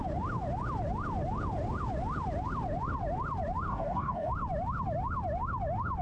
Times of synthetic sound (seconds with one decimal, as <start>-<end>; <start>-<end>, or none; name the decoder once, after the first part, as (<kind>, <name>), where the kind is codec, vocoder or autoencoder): 3.7-4.3 (codec, DAC)